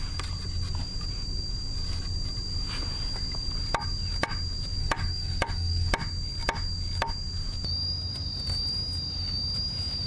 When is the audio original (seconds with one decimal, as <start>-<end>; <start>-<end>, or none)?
0.0-4.8; 5.9-10.1